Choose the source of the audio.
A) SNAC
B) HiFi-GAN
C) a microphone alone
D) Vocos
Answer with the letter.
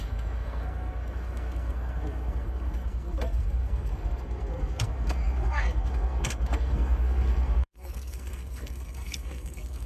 A